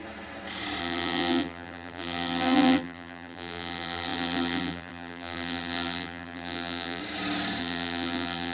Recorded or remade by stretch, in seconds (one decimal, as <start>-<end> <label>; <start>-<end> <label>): 0.0-0.8 recorded; 0.8-7.0 remade; 7.0-7.6 recorded; 7.6-8.5 remade

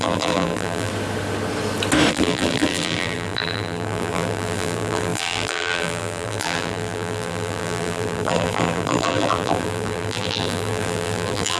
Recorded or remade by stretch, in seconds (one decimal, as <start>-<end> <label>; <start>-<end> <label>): 0.0-0.9 remade; 0.9-2.1 recorded; 2.1-11.6 remade

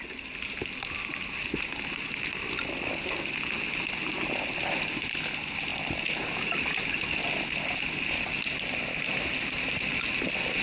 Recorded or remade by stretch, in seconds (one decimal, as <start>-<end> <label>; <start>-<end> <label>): 0.0-10.6 recorded

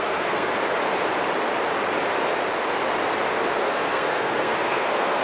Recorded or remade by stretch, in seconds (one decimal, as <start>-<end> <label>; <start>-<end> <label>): 0.0-0.5 remade; 0.5-3.6 recorded; 3.6-5.2 remade

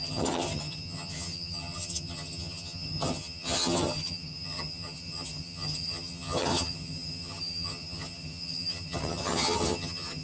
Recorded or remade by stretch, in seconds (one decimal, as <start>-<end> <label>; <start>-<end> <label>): 0.0-10.2 remade

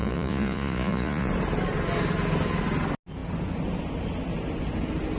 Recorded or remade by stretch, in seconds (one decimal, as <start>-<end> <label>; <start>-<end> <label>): 0.0-1.3 remade; 1.3-5.2 recorded

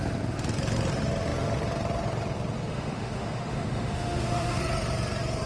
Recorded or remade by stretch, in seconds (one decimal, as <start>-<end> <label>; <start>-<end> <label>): 0.0-2.7 recorded; 2.7-4.6 remade; 4.6-5.5 recorded